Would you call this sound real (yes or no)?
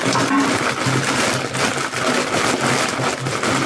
yes